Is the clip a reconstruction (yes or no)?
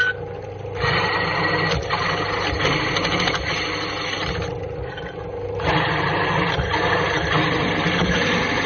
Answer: no